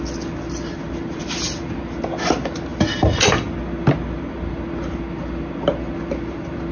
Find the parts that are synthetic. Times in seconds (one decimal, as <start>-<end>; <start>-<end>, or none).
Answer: none